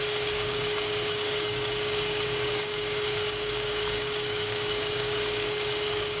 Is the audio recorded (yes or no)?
no